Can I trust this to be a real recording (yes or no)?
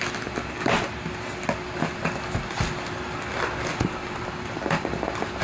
yes